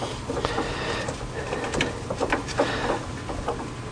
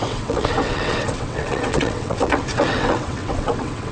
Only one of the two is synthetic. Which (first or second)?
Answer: second